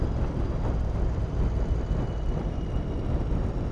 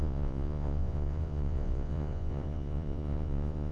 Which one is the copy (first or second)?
second